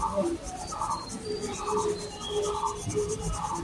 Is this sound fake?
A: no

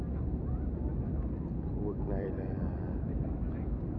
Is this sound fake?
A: yes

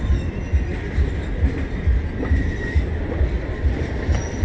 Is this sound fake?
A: no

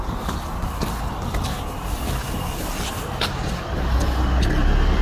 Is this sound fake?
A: no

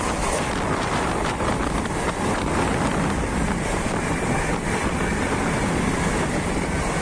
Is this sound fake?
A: no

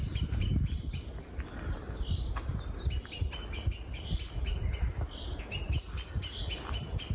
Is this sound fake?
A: no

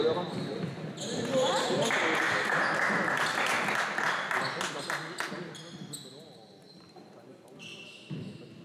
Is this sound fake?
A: no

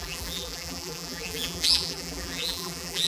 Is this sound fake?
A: yes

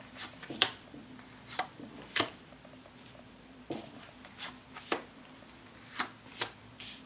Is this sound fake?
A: yes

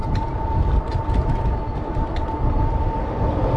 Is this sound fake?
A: no